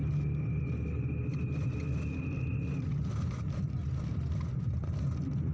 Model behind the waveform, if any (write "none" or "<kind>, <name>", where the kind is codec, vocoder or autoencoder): none